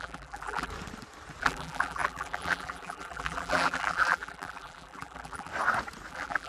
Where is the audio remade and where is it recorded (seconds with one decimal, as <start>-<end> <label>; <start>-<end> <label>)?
0.0-0.7 remade; 0.7-1.4 recorded; 1.4-5.5 remade; 5.5-6.1 recorded; 6.1-6.5 remade

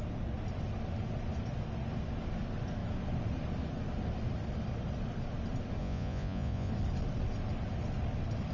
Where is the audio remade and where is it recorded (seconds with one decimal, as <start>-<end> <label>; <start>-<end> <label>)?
0.0-5.8 recorded; 5.8-6.7 remade; 6.7-8.5 recorded

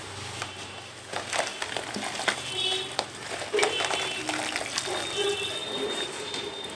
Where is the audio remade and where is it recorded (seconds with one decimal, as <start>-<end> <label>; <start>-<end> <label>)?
0.0-3.6 recorded; 3.6-4.2 remade; 4.2-5.6 recorded; 5.6-6.3 remade; 6.3-6.7 recorded

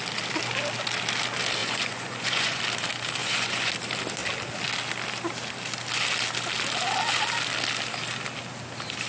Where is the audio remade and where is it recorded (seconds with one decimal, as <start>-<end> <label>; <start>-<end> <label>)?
0.0-1.6 recorded; 1.6-2.6 remade; 2.6-3.2 recorded; 3.2-3.7 remade; 3.7-9.1 recorded

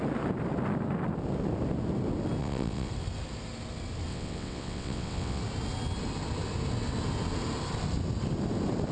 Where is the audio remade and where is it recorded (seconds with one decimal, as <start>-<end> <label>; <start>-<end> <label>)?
0.0-2.4 recorded; 2.4-2.9 remade; 2.9-4.1 recorded; 4.1-5.4 remade; 5.4-8.9 recorded